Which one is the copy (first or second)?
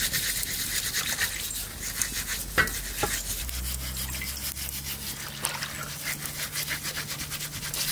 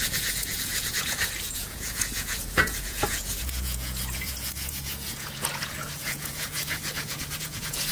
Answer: second